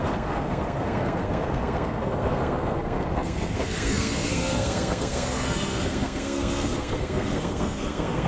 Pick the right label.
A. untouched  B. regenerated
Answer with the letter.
B